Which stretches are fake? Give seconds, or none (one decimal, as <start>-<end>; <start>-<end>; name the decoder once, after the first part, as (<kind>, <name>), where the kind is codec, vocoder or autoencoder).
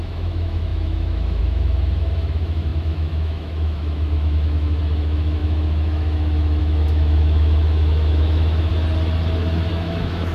0.0-8.7 (autoencoder, DAC-VAE); 9.7-10.3